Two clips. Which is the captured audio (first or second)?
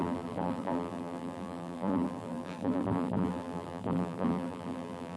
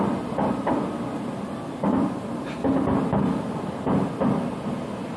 second